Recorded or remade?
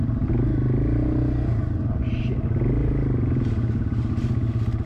recorded